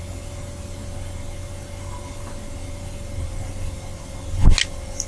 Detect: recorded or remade recorded